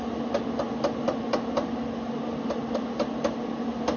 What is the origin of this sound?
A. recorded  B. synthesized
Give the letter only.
A